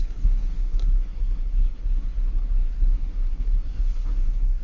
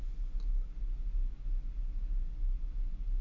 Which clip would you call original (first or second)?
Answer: second